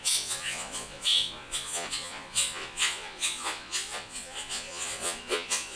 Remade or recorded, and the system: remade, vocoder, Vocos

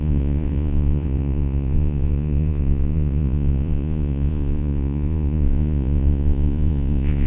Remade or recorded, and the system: remade, vocoder, Vocos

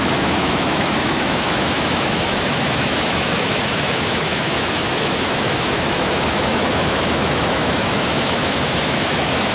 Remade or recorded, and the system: remade, autoencoder, DAC-VAE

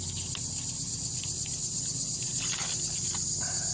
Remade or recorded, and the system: recorded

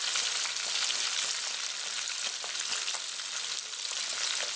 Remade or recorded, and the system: recorded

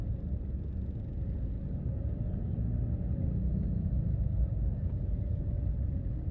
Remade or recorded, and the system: recorded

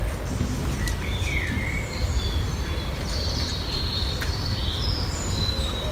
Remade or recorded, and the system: remade, vocoder, BigVGAN v2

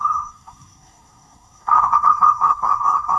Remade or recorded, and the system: remade, codec, SNAC